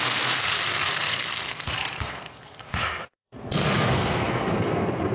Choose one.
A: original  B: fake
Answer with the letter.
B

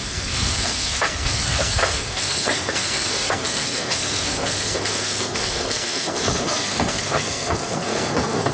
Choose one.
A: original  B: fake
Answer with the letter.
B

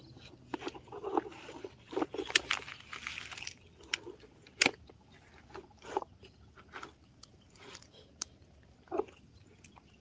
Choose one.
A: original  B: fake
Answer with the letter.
A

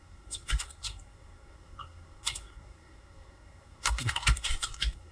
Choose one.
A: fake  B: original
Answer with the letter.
A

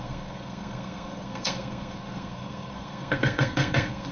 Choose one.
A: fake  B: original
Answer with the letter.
A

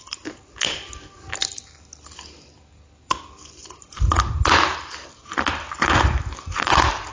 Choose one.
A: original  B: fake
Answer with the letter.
A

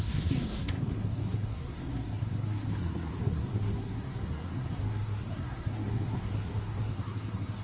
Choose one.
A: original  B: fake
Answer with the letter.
B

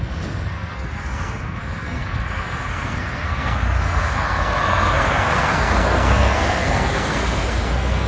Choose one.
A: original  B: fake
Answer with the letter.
B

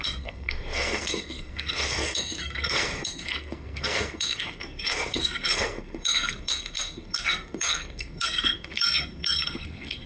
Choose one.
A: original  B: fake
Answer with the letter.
B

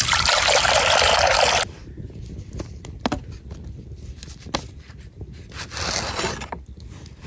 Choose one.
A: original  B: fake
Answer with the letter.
A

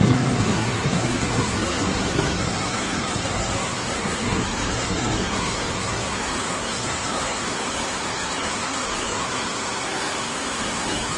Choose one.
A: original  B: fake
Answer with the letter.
B